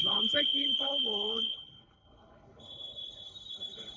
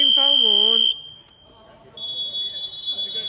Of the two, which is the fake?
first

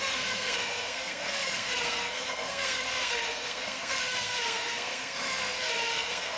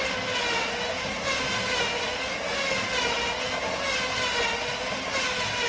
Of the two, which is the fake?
first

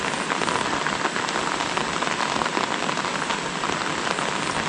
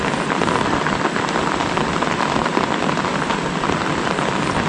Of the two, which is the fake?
second